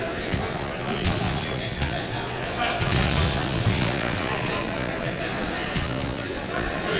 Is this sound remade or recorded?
remade